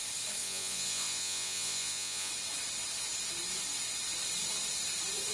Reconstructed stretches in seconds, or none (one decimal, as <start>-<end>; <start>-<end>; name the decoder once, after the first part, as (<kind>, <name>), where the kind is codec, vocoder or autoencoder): 0.4-2.3 (vocoder, Vocos)